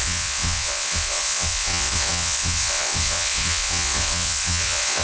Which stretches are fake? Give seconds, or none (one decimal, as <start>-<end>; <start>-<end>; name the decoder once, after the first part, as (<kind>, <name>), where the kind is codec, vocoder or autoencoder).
0.0-5.0 (vocoder, WaveNeXt)